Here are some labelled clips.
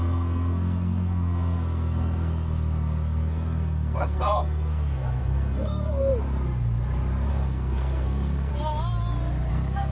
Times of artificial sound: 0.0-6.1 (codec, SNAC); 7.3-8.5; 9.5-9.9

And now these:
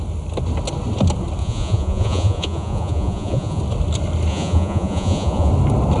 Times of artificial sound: 1.4-3.6 (vocoder, Vocos); 4.3-5.5

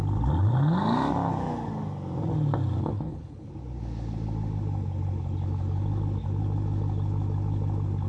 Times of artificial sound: 2.8-3.5 (codec, HILCodec)